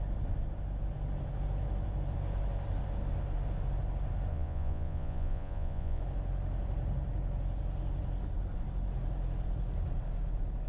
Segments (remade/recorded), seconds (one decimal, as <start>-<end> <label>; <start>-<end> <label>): 0.0-4.3 recorded; 4.3-6.0 remade; 6.0-10.7 recorded